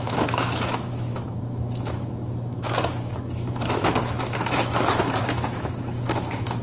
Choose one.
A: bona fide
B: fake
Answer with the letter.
B